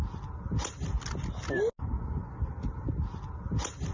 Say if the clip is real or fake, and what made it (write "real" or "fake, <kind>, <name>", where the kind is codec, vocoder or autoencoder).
real